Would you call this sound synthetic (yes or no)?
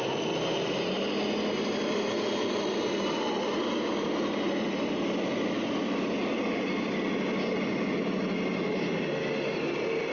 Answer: no